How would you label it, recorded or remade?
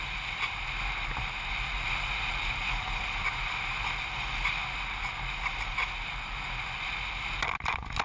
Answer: recorded